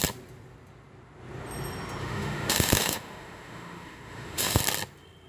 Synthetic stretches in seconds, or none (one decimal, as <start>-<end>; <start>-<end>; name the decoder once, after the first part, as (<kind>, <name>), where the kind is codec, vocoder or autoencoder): 2.0-4.6 (autoencoder, DAC-VAE)

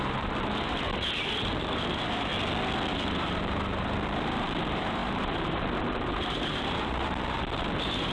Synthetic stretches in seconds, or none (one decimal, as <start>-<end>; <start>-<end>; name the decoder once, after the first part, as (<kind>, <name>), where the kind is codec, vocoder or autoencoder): 0.0-2.3 (vocoder, BigVGAN v2); 2.9-8.1